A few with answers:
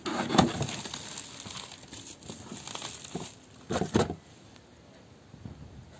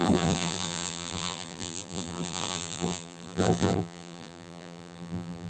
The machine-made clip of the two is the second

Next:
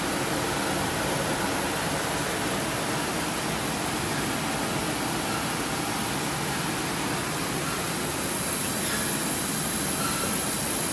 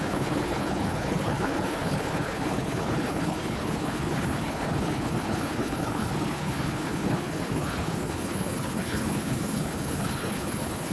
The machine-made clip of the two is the second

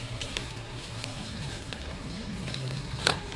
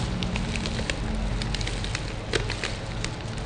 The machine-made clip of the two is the first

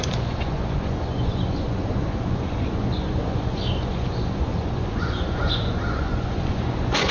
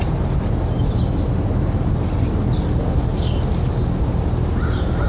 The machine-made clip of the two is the first